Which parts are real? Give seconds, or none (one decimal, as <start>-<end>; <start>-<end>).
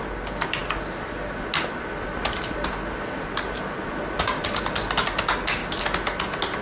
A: 0.0-6.6